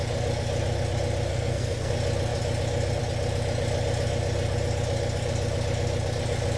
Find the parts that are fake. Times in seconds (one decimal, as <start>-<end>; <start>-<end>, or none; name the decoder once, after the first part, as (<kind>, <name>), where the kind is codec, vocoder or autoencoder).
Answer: 1.3-1.9 (codec, SNAC)